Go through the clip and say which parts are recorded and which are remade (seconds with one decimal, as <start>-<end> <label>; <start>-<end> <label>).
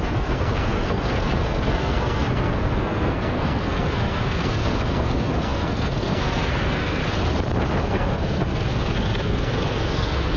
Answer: 0.0-7.0 remade; 7.0-7.8 recorded; 7.8-10.4 remade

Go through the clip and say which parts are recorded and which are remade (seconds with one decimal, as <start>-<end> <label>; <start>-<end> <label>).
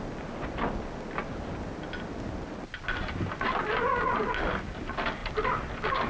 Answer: 0.0-6.1 recorded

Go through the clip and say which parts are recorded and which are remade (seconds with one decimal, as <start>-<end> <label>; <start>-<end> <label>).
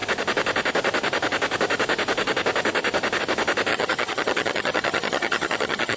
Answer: 0.0-3.7 recorded; 3.7-6.0 remade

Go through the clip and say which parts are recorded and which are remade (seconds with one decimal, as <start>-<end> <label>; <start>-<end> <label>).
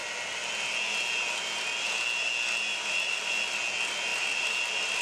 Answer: 0.0-2.7 recorded; 2.7-3.3 remade; 3.3-4.1 recorded; 4.1-5.0 remade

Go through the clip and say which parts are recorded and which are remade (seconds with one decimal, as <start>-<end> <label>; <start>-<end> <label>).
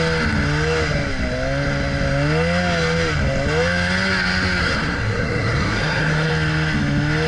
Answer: 0.0-4.6 recorded; 4.6-6.3 remade; 6.3-7.3 recorded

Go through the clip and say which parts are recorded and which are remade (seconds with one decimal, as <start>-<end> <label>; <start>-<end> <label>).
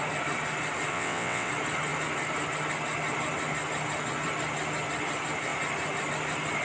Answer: 0.0-0.9 recorded; 0.9-1.5 remade; 1.5-6.6 recorded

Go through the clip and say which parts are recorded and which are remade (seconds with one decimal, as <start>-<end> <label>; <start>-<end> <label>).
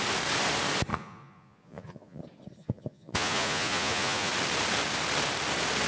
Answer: 0.0-0.9 recorded; 0.9-2.2 remade; 2.2-2.6 recorded; 2.6-4.3 remade; 4.3-5.9 recorded